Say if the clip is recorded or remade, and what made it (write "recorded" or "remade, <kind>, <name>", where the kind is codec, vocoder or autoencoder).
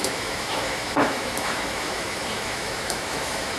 remade, autoencoder, DAC-VAE